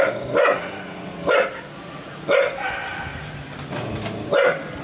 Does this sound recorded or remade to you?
recorded